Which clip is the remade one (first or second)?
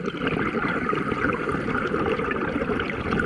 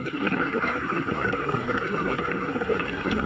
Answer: second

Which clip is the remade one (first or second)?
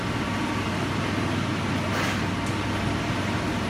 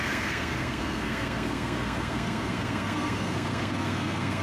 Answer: second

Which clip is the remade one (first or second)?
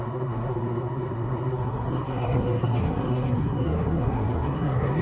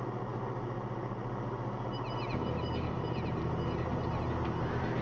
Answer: first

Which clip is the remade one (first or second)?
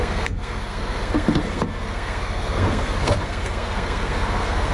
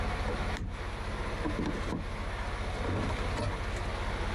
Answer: first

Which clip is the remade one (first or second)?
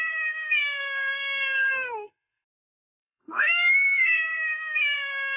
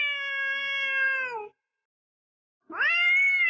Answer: first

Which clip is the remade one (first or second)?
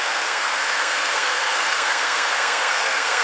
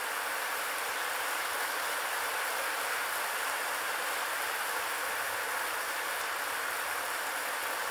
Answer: first